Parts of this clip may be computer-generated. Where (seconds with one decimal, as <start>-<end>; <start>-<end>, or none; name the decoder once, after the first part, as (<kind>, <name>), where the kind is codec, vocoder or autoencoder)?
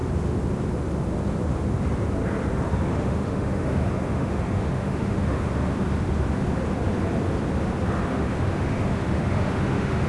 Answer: 2.9-5.5 (autoencoder, DAC-VAE); 8.1-10.1